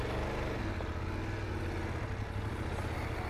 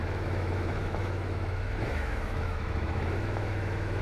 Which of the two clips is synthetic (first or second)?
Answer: second